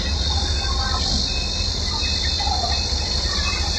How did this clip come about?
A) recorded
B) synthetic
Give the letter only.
A